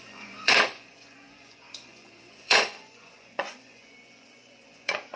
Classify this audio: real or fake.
fake